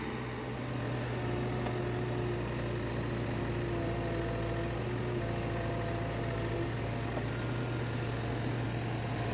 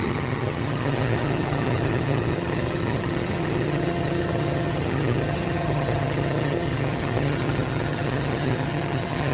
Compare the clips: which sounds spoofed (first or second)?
second